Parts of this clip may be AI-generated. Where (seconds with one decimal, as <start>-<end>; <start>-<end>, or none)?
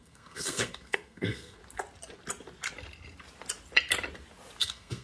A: 0.0-1.6; 4.6-5.0